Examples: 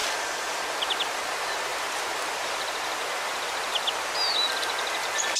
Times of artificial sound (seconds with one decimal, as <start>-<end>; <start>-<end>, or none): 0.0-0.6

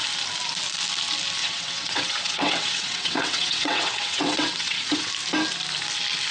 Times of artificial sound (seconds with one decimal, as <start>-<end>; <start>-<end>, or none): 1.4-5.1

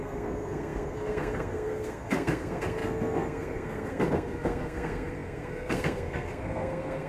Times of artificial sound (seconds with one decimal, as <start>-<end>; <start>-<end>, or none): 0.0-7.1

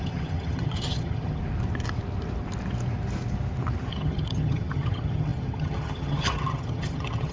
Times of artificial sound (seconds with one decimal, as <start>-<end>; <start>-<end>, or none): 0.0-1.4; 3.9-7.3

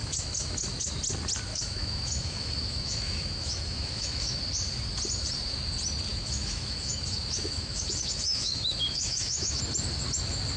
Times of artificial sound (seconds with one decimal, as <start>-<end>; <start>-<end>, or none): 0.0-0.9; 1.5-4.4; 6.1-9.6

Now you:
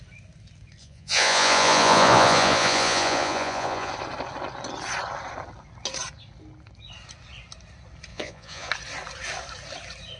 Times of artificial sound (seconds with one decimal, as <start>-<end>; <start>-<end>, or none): 0.8-3.9; 8.1-8.7